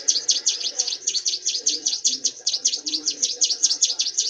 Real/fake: fake